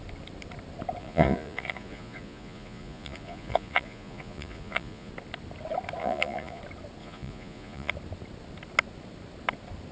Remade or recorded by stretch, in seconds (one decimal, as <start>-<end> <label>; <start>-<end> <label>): 0.0-1.0 recorded; 1.0-5.1 remade; 5.1-6.0 recorded; 6.0-6.6 remade; 6.6-7.0 recorded; 7.0-7.9 remade; 7.9-9.9 recorded